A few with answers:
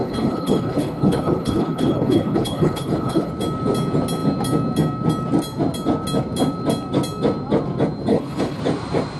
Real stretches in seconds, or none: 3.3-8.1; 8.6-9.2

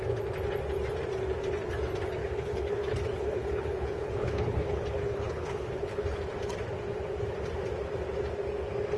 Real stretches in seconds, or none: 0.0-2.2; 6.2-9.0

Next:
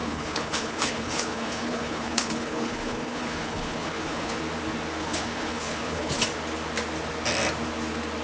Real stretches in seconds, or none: 4.4-5.0; 6.1-8.2

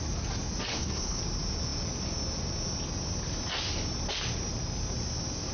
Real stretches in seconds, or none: 0.0-0.7; 1.2-5.5